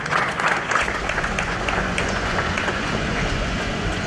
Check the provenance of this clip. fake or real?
fake